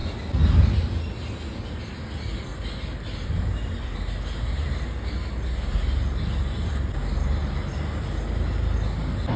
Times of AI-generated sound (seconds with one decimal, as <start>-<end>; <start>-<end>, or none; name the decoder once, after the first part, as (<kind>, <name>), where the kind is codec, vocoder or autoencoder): none